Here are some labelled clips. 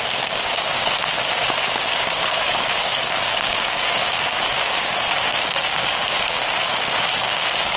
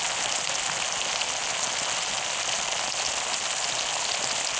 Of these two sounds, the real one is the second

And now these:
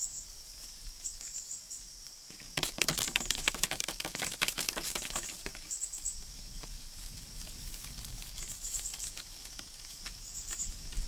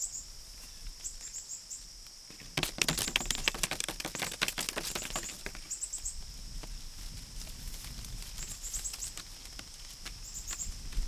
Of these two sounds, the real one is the second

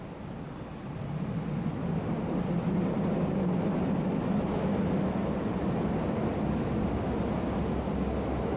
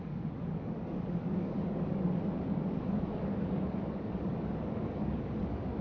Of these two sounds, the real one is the first